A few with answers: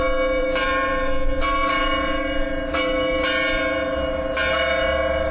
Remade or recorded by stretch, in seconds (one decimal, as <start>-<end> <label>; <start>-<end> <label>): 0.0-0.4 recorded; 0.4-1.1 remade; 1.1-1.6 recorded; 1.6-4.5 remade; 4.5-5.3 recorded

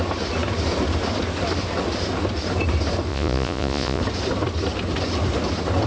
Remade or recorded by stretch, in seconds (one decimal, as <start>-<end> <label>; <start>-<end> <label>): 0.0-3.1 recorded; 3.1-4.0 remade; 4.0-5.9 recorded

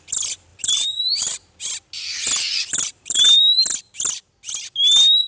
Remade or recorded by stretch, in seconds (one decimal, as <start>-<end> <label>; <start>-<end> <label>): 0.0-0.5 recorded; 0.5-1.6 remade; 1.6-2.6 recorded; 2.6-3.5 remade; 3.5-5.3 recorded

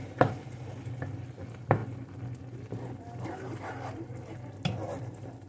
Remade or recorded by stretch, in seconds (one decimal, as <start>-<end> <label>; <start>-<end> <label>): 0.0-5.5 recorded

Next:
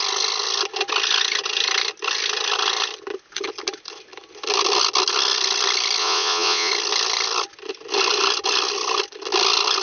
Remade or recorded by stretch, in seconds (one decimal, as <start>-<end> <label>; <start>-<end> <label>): 0.0-6.0 recorded; 6.0-6.7 remade; 6.7-9.8 recorded

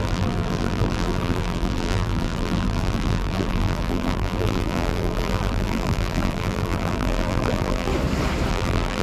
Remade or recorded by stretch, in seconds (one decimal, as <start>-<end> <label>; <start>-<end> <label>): 0.0-7.9 remade; 7.9-8.5 recorded; 8.5-9.0 remade

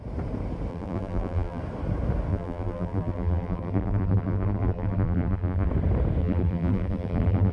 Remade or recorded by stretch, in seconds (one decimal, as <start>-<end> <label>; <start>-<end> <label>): 0.0-0.7 recorded; 0.7-1.6 remade; 1.6-2.3 recorded; 2.3-5.7 remade; 5.7-6.2 recorded; 6.2-7.5 remade

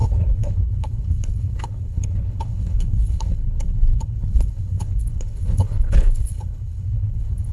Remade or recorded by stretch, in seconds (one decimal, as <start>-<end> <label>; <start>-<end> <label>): 0.0-7.5 remade